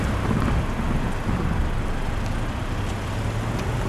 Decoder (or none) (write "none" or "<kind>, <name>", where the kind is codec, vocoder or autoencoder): none